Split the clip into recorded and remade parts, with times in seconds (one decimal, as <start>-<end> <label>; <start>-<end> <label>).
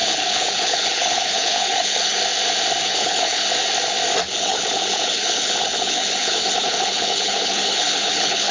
0.0-2.2 remade; 2.2-2.8 recorded; 2.8-3.4 remade; 3.4-4.3 recorded; 4.3-8.5 remade